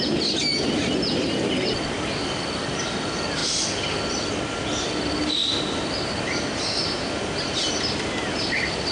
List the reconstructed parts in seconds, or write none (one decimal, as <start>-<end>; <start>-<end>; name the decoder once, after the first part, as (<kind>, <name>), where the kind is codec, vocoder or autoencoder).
none